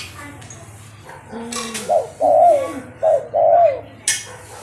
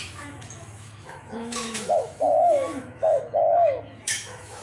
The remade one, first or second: second